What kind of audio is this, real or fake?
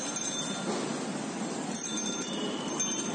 real